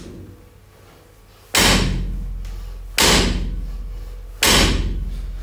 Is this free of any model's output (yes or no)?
yes